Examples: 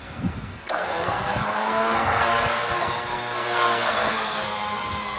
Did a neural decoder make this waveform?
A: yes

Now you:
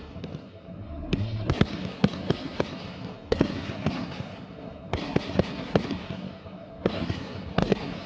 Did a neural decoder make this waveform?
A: yes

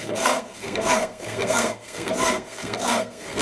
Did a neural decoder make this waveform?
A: yes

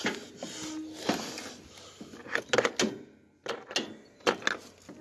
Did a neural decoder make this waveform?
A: no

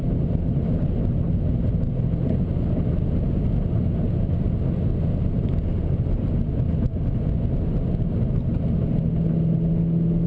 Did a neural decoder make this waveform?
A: no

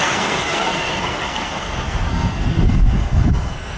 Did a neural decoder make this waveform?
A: yes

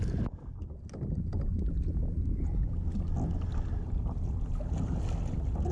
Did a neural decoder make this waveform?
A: no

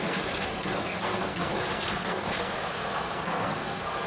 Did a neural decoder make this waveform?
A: yes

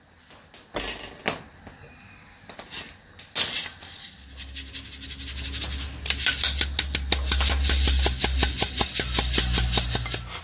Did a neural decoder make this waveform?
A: no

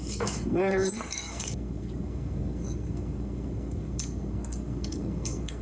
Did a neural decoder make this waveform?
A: yes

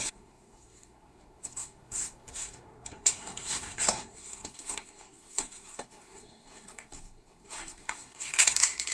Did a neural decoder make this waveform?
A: yes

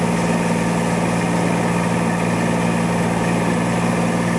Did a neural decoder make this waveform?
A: no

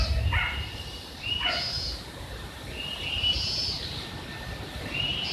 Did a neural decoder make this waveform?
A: no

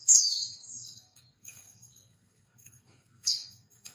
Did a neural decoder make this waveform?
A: yes